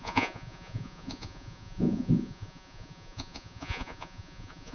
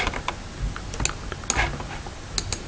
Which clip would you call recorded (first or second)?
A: second